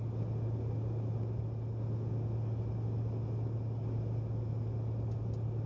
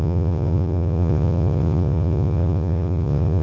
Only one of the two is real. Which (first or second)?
first